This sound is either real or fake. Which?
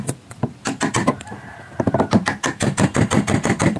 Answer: real